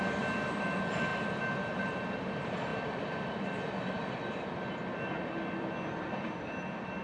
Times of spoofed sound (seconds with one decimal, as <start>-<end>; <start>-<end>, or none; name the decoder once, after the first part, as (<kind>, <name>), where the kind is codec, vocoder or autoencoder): 0.0-1.1 (vocoder, BigVGAN v2); 1.8-7.0